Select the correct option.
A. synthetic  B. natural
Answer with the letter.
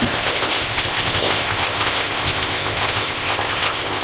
A